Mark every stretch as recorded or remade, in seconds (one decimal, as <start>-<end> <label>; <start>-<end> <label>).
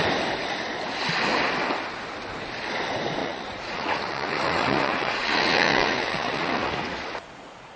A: 0.0-3.2 recorded; 3.2-7.8 remade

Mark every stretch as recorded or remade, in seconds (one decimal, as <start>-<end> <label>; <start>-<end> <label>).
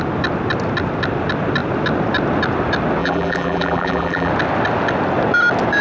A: 0.0-3.0 recorded; 3.0-4.3 remade; 4.3-5.8 recorded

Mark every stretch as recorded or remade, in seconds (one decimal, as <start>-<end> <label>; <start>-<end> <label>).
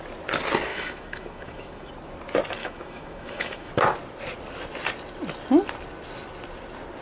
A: 0.0-0.7 recorded; 0.7-1.9 remade; 1.9-2.6 recorded; 2.6-3.7 remade; 3.7-7.0 recorded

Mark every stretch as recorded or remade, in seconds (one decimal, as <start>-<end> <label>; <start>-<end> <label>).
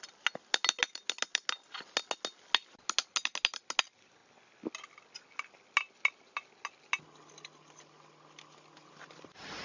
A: 0.0-9.6 recorded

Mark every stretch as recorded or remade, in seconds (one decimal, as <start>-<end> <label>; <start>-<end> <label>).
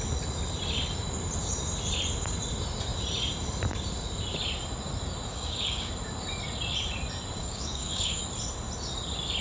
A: 0.0-5.3 recorded; 5.3-5.9 remade; 5.9-7.4 recorded; 7.4-8.2 remade; 8.2-9.4 recorded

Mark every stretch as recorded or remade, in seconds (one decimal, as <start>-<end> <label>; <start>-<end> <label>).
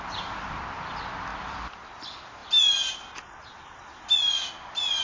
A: 0.0-1.3 recorded; 1.3-1.9 remade; 1.9-5.0 recorded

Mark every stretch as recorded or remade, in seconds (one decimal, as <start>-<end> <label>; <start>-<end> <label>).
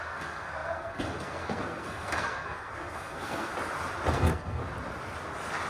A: 0.0-3.5 remade; 3.5-4.1 recorded; 4.1-4.6 remade; 4.6-5.7 recorded